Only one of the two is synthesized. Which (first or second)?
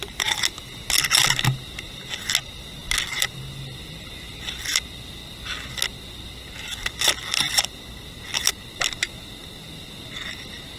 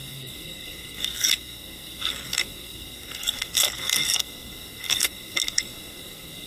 second